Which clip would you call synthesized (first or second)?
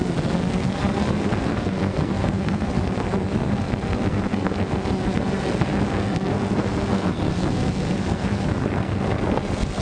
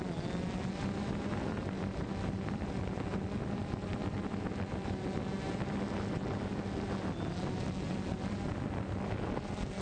first